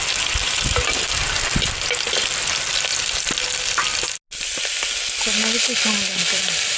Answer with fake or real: real